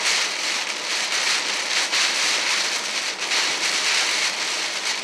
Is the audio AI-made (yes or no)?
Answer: no